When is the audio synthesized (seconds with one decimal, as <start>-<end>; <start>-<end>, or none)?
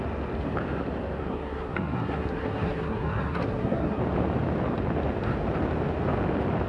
1.2-4.0